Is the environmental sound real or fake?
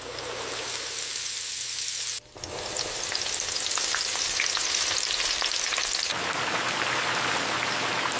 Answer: real